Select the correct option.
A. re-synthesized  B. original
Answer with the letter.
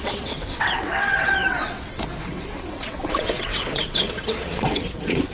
A